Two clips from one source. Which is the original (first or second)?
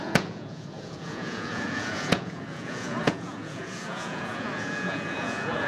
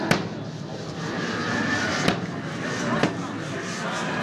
second